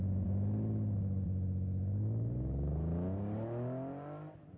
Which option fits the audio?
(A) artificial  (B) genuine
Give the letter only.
B